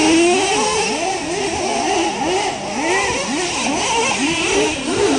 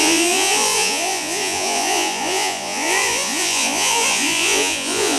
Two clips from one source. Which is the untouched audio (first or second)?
first